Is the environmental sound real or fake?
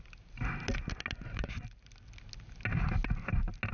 real